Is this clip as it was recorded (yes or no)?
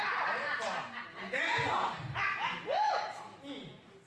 yes